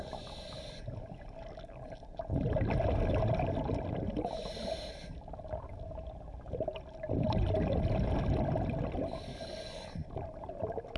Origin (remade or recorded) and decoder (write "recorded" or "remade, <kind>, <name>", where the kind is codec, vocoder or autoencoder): recorded